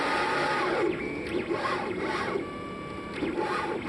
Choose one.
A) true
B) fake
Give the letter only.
B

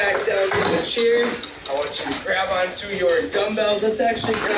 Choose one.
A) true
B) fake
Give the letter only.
A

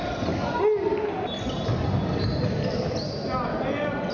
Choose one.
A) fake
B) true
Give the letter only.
B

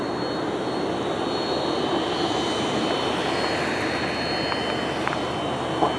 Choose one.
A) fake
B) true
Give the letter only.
B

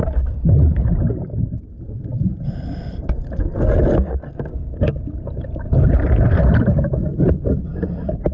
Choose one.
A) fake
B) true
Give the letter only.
B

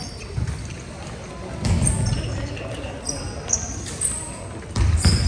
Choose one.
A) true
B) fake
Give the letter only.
B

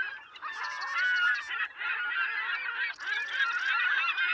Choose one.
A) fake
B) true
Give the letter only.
B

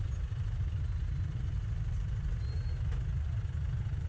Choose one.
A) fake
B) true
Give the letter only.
B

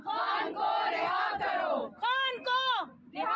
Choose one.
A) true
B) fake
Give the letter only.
A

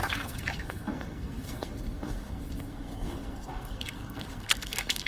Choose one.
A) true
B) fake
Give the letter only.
B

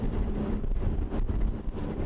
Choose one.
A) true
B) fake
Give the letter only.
B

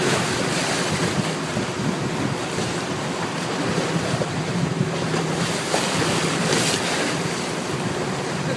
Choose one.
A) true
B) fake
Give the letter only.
B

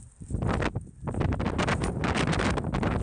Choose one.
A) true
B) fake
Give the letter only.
A